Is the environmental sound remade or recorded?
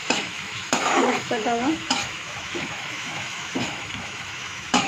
remade